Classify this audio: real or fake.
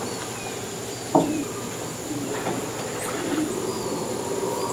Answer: real